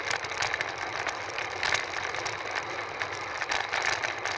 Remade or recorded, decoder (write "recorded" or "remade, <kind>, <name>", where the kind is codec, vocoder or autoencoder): recorded